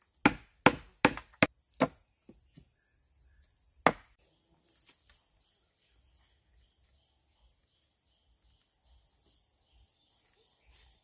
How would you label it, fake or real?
real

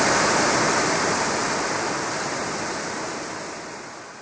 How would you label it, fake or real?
real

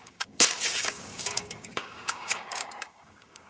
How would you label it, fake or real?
fake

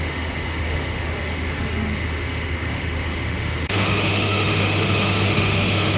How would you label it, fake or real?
fake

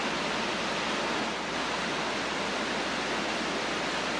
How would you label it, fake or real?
real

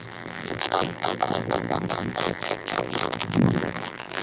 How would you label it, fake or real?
fake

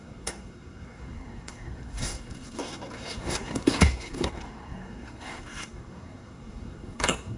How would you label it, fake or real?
fake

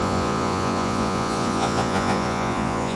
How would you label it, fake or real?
fake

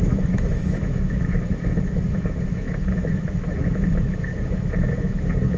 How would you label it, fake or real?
fake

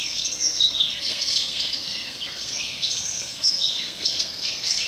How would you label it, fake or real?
fake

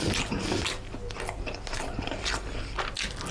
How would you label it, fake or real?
real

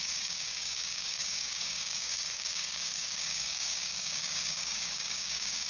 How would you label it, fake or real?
fake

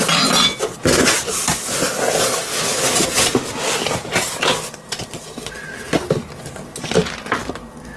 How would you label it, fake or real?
real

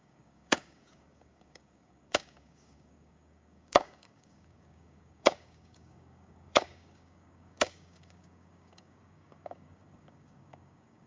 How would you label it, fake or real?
fake